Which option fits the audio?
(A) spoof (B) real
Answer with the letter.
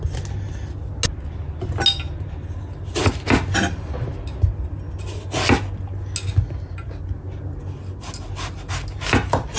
B